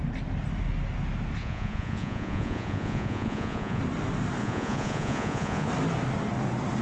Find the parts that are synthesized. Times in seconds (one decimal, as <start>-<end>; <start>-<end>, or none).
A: 1.4-3.8; 4.4-5.7